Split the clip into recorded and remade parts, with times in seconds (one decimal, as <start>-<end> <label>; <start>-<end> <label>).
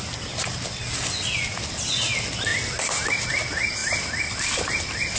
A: 0.0-2.5 recorded; 2.5-3.3 remade; 3.3-3.8 recorded; 3.8-5.2 remade